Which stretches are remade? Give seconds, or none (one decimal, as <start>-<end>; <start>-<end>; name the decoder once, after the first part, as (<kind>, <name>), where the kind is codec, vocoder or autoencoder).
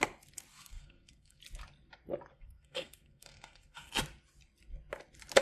0.5-1.4 (codec, SNAC); 2.3-3.9